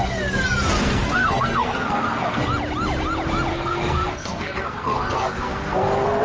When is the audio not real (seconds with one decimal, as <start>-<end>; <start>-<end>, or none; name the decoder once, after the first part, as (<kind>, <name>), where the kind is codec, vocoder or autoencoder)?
0.8-2.4 (codec, SNAC); 3.5-6.2